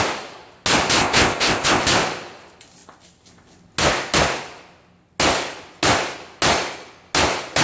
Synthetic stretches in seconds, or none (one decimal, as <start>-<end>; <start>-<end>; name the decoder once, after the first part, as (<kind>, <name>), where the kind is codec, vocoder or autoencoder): 1.0-1.8 (codec, ZipCodec)